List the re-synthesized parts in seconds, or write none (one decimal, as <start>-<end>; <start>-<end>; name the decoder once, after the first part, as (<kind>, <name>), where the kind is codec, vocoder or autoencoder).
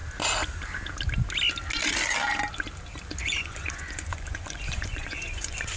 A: 3.2-5.8 (vocoder, Vocos)